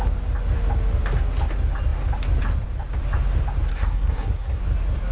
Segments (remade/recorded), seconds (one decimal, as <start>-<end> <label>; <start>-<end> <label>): 0.0-3.7 recorded; 3.7-4.6 remade; 4.6-5.1 recorded